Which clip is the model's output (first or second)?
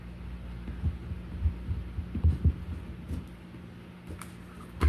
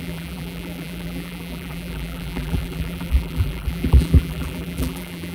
second